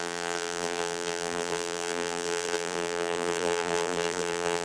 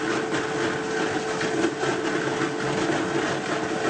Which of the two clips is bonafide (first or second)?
second